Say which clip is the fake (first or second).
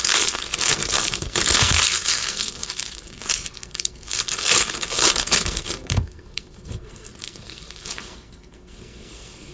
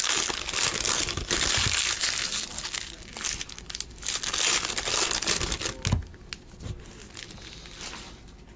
first